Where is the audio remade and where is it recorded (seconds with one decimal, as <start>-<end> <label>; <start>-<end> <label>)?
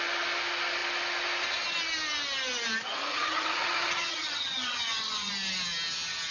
0.0-3.1 recorded; 3.1-5.3 remade; 5.3-6.3 recorded